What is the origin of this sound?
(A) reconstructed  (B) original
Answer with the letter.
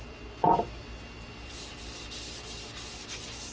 B